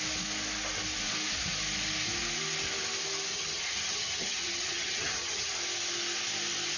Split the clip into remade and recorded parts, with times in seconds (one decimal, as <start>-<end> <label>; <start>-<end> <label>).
0.0-3.3 recorded; 3.3-5.6 remade; 5.6-6.8 recorded